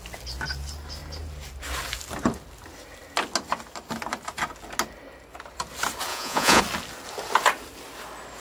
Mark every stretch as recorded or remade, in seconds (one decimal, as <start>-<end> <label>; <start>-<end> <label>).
0.0-6.1 recorded; 6.1-6.6 remade; 6.6-8.4 recorded